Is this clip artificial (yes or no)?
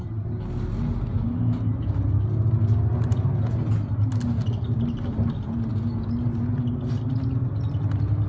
no